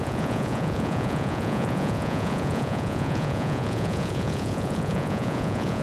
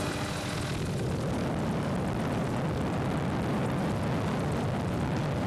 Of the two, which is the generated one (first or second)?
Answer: first